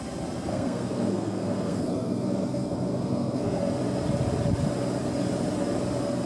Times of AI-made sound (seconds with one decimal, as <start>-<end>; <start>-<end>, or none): 0.5-3.6